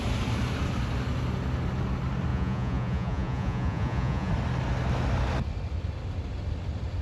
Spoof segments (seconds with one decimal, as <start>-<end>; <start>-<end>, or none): 2.3-4.3